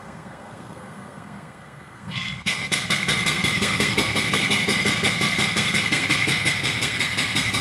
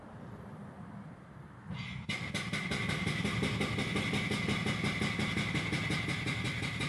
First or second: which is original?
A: second